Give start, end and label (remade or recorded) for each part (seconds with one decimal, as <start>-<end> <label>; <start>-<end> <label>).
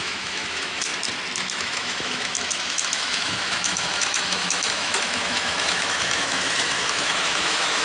0.0-0.9 remade; 0.9-1.4 recorded; 1.4-7.8 remade